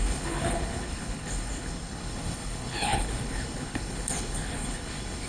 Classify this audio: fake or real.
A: fake